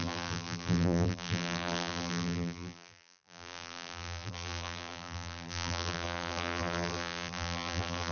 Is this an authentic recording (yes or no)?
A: no